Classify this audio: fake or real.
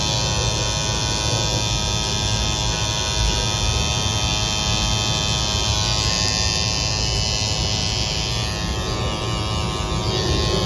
real